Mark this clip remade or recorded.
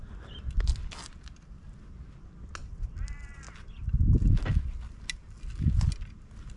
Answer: recorded